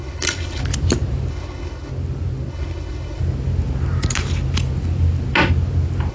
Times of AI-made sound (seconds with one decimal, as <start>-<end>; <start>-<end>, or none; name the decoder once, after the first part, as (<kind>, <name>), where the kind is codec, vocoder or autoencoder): 0.0-0.6 (codec, HILCodec); 1.3-1.9; 2.5-3.2